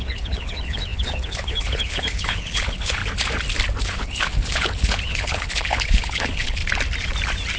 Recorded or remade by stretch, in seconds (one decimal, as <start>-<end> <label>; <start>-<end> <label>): 0.0-3.0 remade; 3.0-3.8 recorded; 3.8-6.6 remade; 6.6-7.6 recorded